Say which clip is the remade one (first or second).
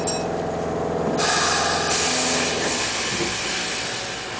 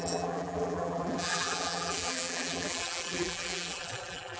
second